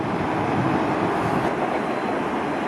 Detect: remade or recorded recorded